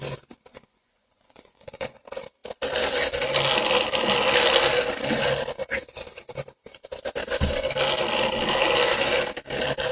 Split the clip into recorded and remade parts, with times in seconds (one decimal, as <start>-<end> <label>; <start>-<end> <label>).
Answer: 0.0-0.5 recorded; 0.5-2.0 remade; 2.0-9.9 recorded